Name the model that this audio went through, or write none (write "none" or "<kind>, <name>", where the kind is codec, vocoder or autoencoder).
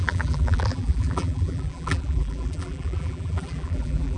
vocoder, BigVGAN v2